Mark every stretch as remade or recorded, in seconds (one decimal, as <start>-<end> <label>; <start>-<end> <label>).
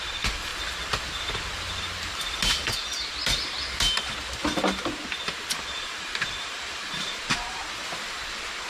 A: 0.0-0.5 remade; 0.5-5.5 recorded; 5.5-7.6 remade; 7.6-8.7 recorded